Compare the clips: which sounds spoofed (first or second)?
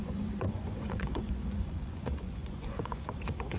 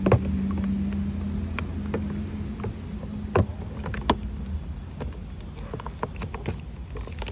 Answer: first